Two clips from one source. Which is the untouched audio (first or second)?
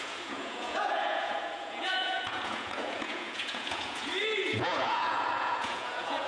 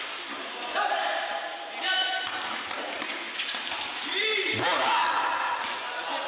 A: second